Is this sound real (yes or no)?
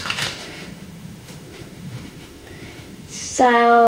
no